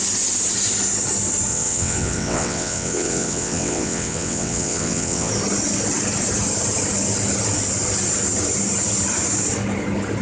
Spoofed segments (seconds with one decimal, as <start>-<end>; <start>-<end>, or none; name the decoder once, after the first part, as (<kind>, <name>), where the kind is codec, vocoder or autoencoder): 1.5-5.3 (vocoder, WaveNeXt)